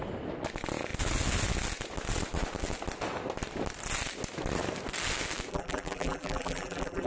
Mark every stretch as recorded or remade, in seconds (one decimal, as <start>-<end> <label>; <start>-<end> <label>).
0.0-5.5 recorded; 5.5-7.1 remade